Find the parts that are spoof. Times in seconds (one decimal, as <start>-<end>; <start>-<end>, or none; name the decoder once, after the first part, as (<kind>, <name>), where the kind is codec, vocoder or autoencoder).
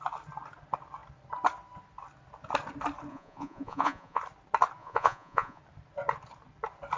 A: 3.1-4.2 (vocoder, Vocos); 4.8-5.6